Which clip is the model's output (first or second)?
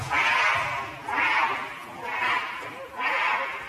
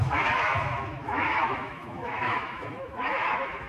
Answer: second